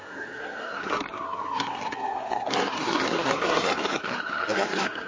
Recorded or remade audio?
remade